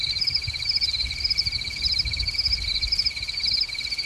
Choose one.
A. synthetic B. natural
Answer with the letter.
B